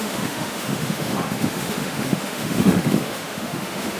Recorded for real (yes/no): no